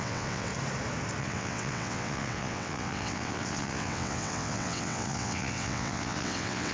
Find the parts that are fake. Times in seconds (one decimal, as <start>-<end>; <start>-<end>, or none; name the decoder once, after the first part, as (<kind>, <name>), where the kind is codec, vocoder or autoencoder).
0.0-0.5 (vocoder, WaveNeXt); 1.2-6.7